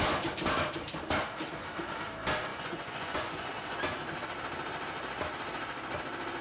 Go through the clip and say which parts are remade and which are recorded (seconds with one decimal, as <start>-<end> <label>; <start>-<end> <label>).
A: 0.0-2.5 recorded; 2.5-3.5 remade; 3.5-6.4 recorded